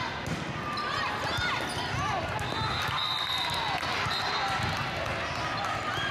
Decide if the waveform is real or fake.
real